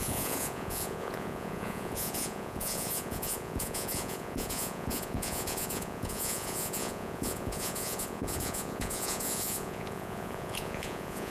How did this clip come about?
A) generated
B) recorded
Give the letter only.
A